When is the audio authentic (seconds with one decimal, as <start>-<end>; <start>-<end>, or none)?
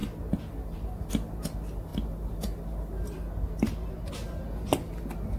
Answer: 0.0-5.4